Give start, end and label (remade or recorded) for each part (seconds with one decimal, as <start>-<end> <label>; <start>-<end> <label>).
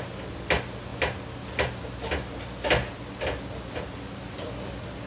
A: 0.0-5.1 recorded